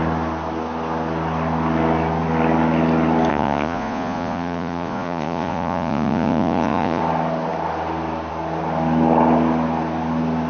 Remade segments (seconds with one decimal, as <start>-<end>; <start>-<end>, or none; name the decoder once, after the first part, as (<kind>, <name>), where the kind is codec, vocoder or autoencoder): 3.3-7.0 (vocoder, Vocos)